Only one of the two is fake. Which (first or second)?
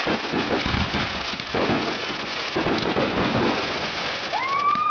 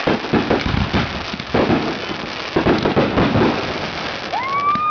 first